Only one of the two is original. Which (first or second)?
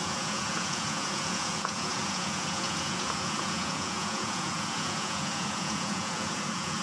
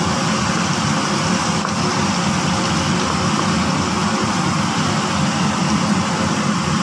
second